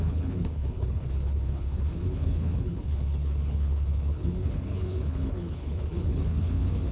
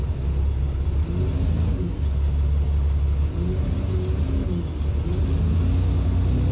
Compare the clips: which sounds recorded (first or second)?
second